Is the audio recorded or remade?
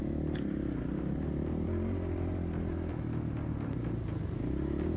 recorded